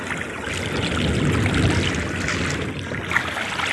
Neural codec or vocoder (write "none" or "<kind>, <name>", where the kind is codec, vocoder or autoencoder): none